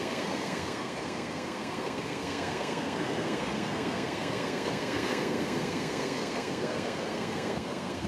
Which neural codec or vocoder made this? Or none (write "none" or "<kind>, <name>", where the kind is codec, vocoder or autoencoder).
codec, SNAC